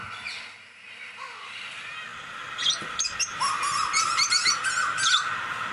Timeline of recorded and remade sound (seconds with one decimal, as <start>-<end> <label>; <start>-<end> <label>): 0.0-5.7 recorded